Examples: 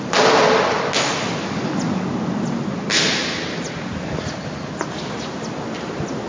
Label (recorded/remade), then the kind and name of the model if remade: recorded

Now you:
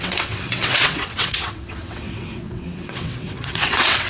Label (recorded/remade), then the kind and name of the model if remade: remade, vocoder, WaveNeXt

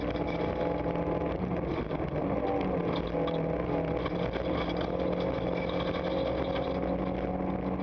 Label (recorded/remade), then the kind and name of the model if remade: recorded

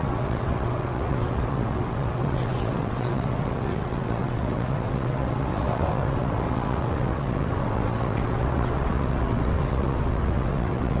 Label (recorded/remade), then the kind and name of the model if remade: remade, vocoder, WaveNeXt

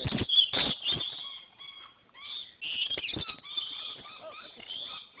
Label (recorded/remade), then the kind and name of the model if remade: recorded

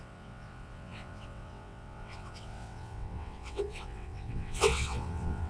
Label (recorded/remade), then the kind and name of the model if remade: remade, vocoder, WaveNeXt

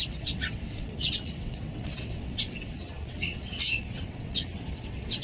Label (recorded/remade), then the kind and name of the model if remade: remade, vocoder, WaveNeXt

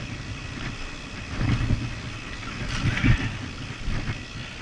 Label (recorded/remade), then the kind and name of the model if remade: recorded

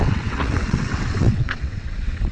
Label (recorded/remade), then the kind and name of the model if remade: remade, vocoder, WaveNeXt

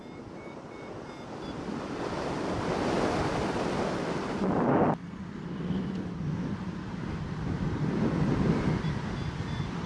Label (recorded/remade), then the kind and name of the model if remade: recorded